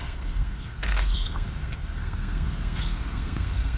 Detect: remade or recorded remade